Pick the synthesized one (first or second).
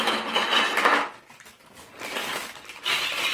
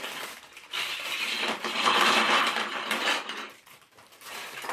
second